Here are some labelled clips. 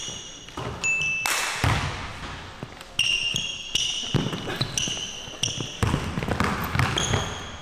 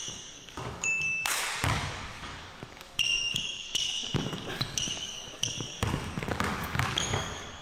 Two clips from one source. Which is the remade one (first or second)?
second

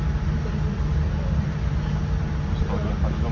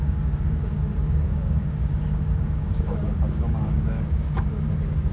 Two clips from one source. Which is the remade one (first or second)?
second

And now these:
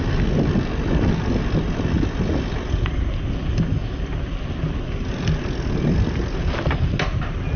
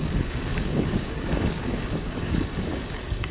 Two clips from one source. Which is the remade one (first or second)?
second